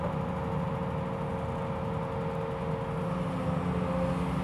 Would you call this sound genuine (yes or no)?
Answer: yes